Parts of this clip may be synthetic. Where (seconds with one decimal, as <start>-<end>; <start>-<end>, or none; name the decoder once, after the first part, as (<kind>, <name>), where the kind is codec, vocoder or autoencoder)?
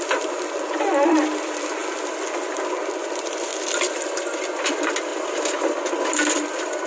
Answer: 0.0-1.8 (vocoder, BigVGAN v2); 2.7-5.1; 6.3-6.9